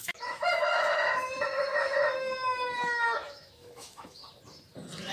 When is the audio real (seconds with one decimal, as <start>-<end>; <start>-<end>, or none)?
4.2-5.1